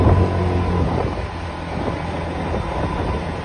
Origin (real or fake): real